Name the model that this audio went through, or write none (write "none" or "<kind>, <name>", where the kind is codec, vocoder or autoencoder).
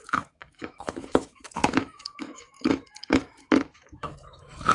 autoencoder, DAC-VAE